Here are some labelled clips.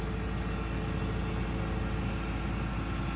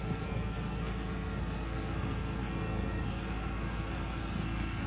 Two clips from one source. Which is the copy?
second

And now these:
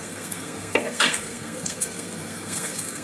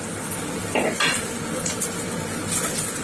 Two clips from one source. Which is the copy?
first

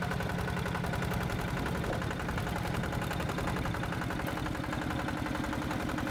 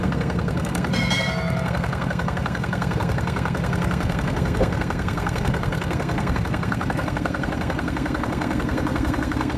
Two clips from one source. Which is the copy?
second